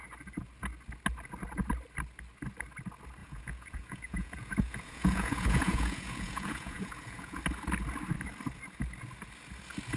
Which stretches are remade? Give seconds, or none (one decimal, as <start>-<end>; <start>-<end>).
3.2-7.4